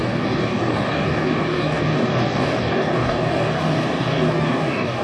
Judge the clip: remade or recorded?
remade